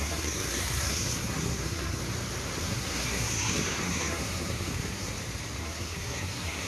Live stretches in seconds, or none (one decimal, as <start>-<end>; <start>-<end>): 2.0-2.6; 5.1-5.6